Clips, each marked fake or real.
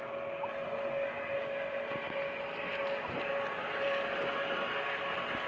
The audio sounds real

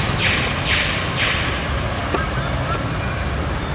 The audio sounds real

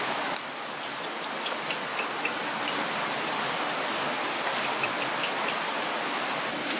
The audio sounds real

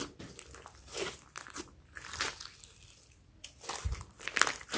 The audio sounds real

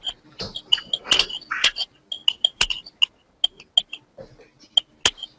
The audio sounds real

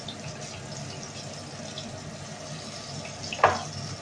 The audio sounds real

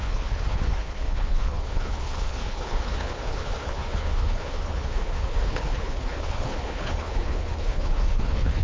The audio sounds fake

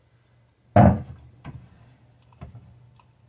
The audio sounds real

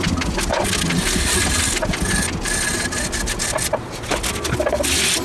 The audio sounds real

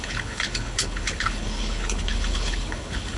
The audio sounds fake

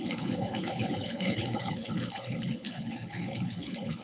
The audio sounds fake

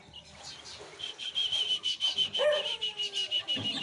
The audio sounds real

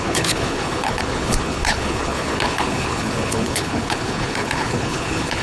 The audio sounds fake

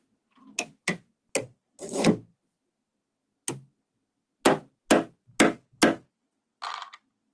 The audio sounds real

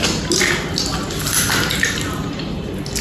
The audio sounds real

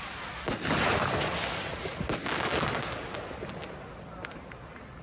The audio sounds real